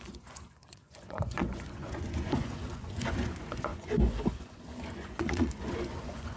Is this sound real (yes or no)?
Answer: no